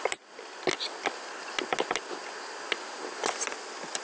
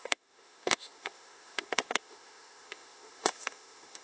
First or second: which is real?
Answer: first